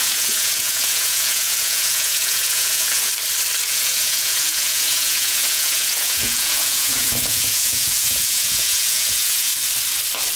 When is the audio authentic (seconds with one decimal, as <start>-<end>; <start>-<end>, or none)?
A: 3.1-3.6; 9.5-10.4